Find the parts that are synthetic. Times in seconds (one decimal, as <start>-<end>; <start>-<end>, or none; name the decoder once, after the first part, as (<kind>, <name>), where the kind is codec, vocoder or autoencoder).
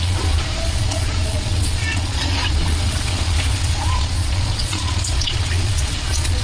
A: 0.0-6.4 (vocoder, Vocos)